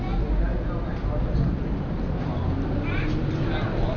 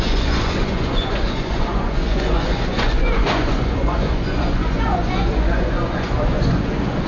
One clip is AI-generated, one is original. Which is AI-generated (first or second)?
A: second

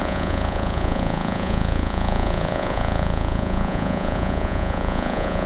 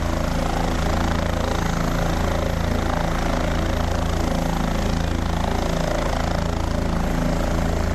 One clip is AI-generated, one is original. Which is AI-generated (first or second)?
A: first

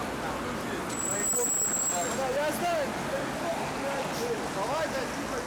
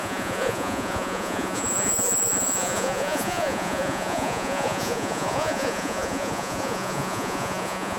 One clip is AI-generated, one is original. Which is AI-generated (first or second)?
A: second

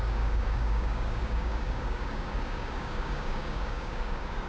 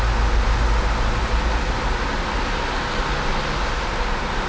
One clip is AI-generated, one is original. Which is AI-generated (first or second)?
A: first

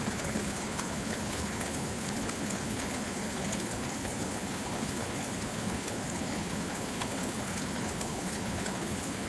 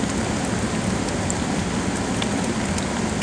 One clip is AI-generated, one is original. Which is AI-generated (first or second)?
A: first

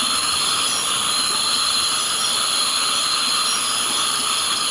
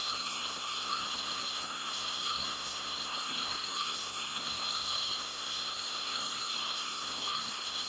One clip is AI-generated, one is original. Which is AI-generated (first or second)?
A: second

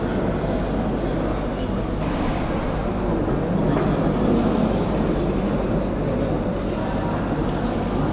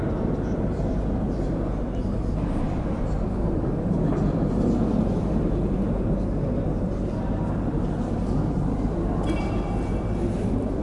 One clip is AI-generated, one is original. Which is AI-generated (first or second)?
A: second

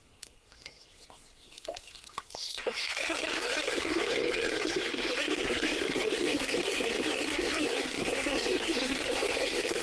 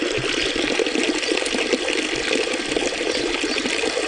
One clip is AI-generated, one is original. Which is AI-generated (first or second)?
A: first